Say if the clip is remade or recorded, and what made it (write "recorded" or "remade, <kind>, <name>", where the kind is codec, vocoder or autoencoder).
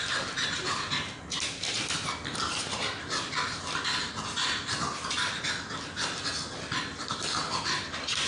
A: recorded